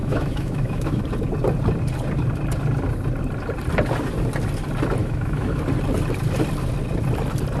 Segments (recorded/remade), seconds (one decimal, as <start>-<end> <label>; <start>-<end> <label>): 0.0-1.0 remade; 1.0-5.0 recorded; 5.0-5.6 remade; 5.6-7.6 recorded